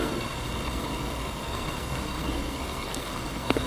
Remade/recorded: remade